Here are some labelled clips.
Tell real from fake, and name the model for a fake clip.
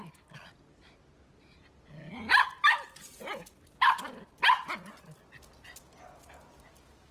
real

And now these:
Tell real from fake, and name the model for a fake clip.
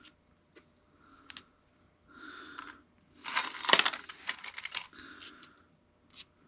real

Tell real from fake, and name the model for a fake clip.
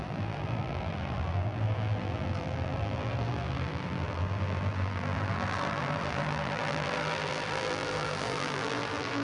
fake, vocoder, BigVGAN v2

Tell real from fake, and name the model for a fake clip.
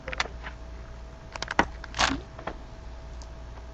real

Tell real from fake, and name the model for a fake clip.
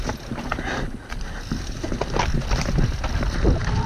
real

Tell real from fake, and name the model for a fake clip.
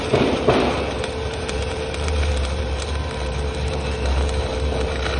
fake, vocoder, BigVGAN v2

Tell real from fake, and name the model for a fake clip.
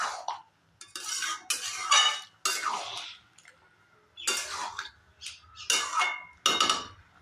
real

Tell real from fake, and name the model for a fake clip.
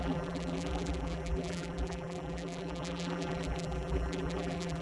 fake, vocoder, BigVGAN v2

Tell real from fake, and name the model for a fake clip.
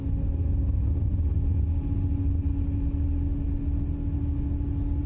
real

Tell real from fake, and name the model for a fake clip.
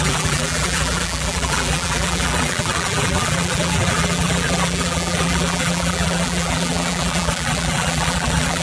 fake, vocoder, BigVGAN v2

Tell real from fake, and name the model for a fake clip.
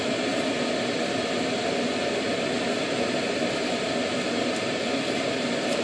real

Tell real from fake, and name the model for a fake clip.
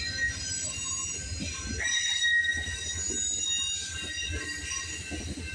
real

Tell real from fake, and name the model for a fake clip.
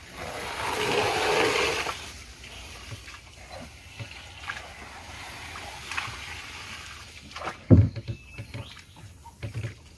real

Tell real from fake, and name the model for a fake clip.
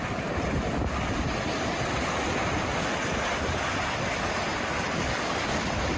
fake, vocoder, BigVGAN v2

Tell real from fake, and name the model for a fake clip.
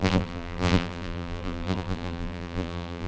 fake, vocoder, BigVGAN v2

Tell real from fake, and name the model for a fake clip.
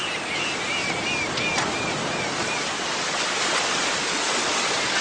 real